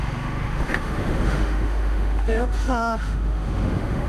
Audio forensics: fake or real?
fake